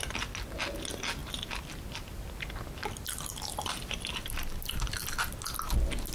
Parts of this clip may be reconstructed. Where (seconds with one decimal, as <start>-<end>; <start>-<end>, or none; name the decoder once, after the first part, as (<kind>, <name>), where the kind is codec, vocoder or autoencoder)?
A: 1.2-4.9 (vocoder, BigVGAN v2)